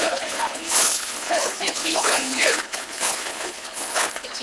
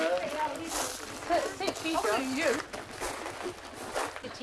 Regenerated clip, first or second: first